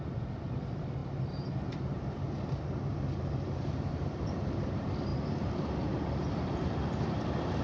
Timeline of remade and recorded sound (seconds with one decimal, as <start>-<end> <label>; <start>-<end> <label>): 0.0-7.6 remade